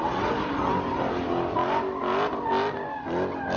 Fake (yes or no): no